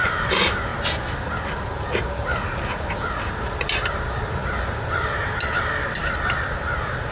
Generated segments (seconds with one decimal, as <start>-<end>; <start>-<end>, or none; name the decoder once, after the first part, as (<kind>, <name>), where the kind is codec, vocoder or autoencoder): none